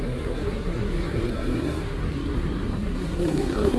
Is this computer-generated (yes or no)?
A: yes